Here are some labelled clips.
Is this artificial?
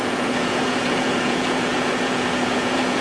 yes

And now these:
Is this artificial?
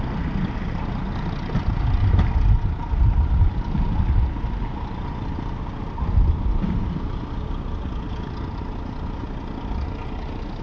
no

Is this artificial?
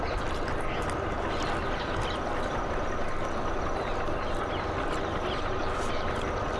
no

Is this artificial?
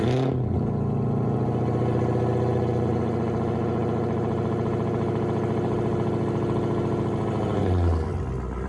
no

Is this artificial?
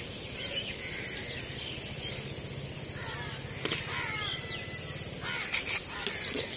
no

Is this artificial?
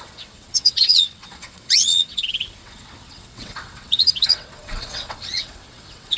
yes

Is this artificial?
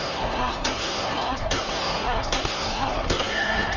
yes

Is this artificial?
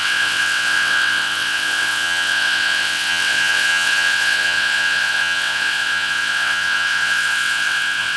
yes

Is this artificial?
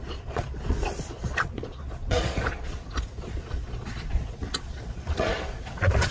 yes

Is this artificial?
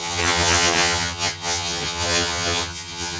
yes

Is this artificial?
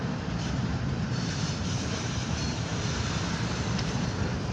yes